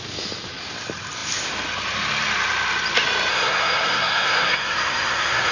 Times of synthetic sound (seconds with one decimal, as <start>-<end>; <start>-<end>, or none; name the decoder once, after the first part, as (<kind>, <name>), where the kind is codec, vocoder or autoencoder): 3.3-5.5 (codec, SNAC)